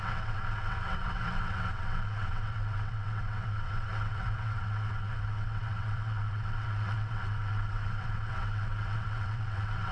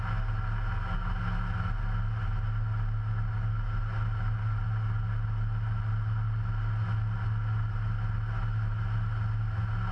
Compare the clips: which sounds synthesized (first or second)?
first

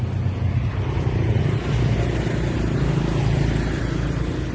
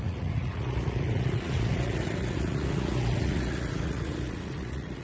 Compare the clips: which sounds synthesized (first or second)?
second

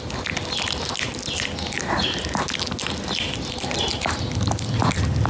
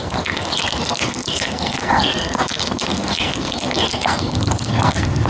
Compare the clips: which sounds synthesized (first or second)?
second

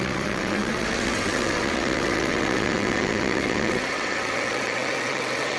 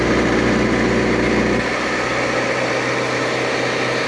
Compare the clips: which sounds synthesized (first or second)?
first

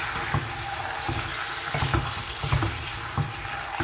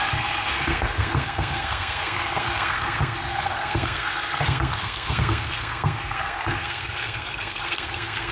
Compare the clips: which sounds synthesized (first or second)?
second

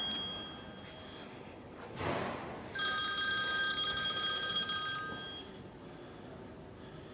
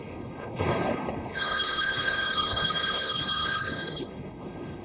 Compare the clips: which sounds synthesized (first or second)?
second